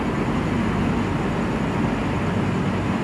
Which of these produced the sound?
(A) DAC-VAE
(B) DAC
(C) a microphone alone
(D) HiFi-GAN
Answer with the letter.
C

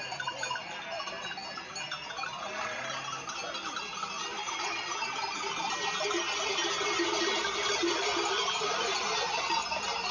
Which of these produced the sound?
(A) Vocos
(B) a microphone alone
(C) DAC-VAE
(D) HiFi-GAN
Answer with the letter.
B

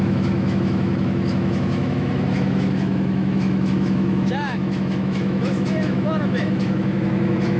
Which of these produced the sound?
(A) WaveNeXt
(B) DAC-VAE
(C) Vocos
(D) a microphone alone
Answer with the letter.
B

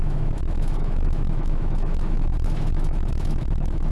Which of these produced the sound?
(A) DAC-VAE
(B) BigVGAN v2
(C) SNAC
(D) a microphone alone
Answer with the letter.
A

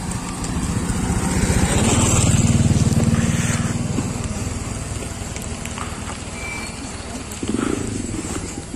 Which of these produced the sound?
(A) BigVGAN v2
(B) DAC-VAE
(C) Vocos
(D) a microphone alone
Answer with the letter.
D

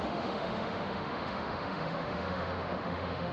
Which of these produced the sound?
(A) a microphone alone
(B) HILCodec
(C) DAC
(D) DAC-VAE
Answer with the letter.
D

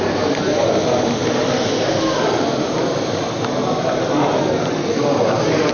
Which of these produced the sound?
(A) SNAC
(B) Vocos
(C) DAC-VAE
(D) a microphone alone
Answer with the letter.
D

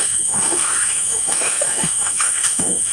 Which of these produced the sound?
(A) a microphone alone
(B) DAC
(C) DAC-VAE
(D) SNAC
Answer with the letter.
C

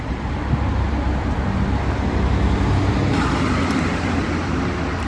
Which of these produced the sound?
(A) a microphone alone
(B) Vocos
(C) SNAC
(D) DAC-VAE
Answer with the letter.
A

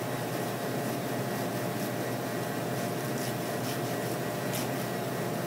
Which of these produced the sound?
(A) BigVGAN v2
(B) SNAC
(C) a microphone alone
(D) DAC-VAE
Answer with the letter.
C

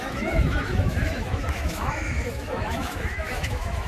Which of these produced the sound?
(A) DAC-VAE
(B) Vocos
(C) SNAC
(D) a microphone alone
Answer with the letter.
A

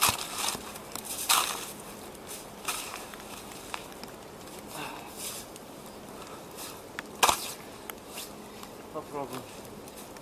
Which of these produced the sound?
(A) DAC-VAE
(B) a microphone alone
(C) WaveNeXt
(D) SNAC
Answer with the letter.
B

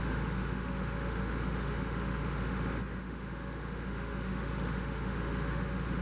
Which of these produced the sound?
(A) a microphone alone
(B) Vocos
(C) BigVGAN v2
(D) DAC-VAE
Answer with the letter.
D